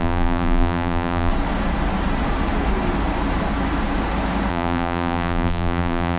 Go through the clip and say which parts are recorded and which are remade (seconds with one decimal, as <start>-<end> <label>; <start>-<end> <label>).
0.0-1.3 remade; 1.3-4.5 recorded; 4.5-6.2 remade